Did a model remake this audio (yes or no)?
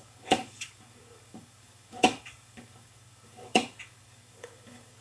yes